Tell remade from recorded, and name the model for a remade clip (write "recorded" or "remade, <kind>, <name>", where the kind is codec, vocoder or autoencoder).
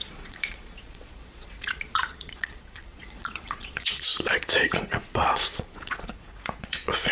remade, vocoder, Vocos